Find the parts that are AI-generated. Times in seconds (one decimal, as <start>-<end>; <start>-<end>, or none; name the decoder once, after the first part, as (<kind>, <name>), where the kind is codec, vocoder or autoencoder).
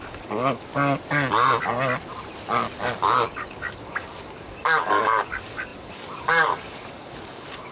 0.0-0.7 (codec, DAC); 2.9-7.7